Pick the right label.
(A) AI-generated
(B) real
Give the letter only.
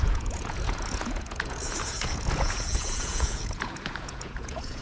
A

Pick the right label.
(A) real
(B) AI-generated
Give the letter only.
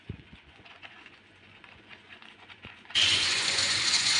B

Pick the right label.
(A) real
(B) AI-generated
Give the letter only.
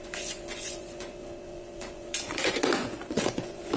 B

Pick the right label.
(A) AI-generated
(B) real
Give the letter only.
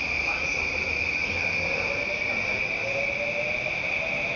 B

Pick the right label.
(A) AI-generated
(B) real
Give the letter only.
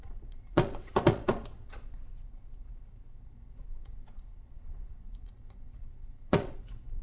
A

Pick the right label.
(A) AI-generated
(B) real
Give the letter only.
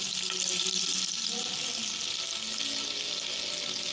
B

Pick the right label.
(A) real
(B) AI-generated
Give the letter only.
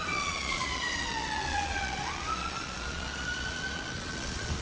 B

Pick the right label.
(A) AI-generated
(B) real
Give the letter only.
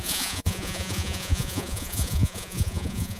A